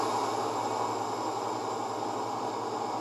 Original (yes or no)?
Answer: yes